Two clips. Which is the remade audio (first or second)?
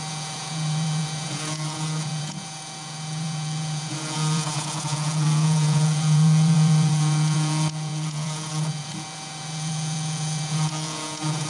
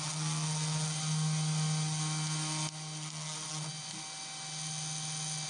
first